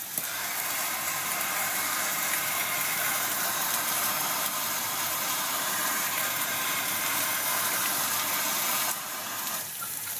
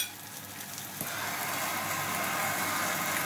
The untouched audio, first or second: second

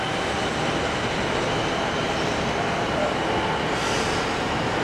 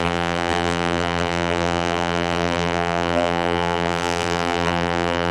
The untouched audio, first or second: first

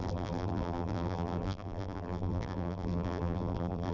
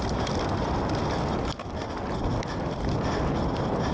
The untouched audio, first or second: second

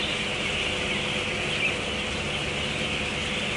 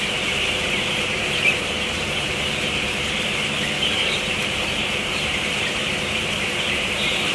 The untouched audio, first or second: first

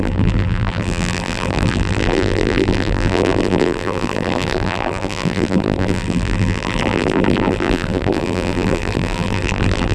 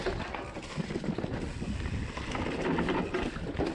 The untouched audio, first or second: second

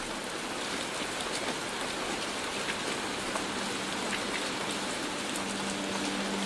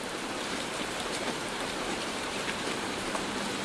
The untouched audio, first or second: first